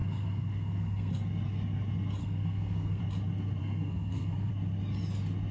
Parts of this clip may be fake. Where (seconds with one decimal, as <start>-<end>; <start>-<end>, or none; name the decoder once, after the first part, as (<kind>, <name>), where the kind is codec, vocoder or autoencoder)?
0.0-1.1 (codec, SNAC); 2.2-3.0; 3.6-4.5